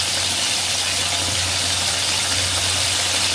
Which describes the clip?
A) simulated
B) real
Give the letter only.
B